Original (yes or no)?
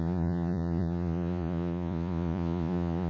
no